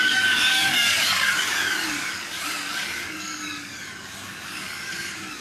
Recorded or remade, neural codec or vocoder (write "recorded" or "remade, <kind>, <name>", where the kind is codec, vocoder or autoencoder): remade, codec, DAC